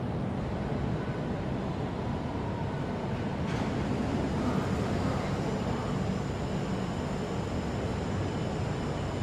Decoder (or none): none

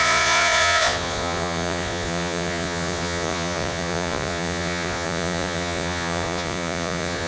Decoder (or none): vocoder, Vocos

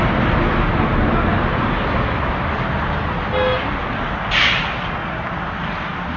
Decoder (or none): none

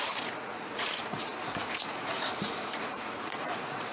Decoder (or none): vocoder, Vocos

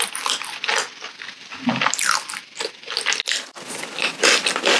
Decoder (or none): none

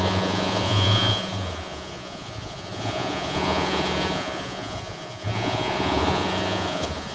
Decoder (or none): vocoder, Vocos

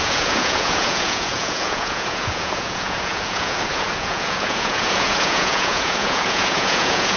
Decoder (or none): vocoder, Vocos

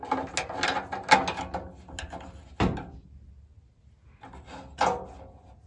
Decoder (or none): none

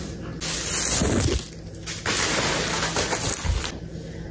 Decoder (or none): none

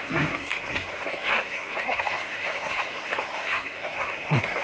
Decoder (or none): codec, SNAC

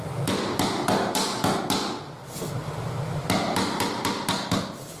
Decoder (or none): none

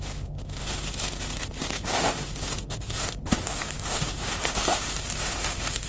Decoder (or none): autoencoder, DAC-VAE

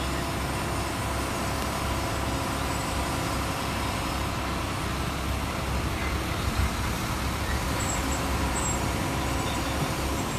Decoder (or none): none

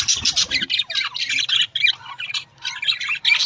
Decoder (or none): none